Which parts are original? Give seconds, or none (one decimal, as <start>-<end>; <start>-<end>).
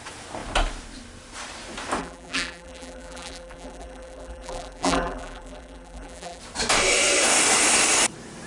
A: 0.0-2.0; 6.4-8.5